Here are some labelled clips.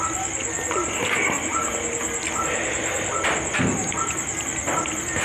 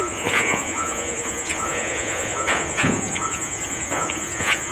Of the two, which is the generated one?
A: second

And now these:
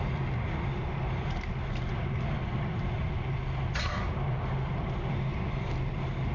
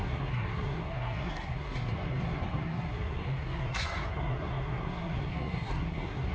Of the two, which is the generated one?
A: second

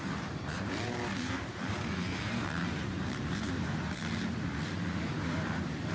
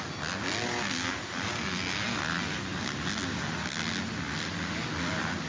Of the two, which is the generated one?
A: first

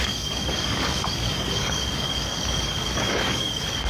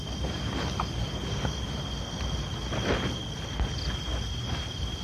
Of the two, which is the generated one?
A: first